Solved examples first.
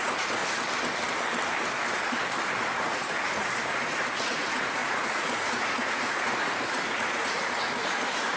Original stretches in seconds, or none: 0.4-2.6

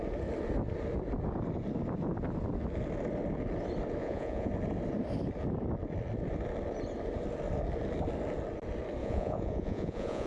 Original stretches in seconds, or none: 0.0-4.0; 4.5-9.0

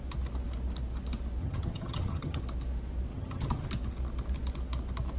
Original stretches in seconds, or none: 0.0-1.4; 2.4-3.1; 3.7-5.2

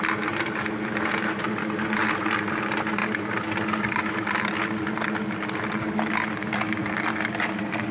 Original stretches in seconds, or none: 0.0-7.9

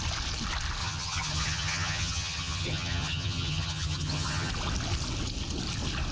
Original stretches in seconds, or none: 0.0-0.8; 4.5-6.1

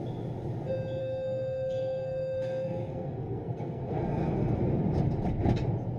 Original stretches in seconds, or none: 0.0-1.0; 4.6-6.0

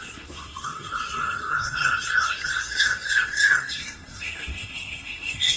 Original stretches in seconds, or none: none

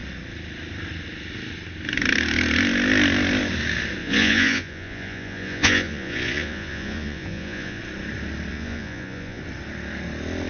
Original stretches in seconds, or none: 0.0-4.0; 7.8-8.5; 9.4-10.5